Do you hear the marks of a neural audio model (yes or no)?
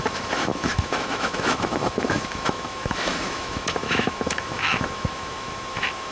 yes